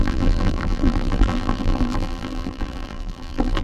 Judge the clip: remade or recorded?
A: remade